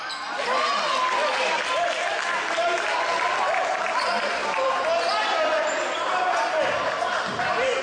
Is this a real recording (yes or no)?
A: yes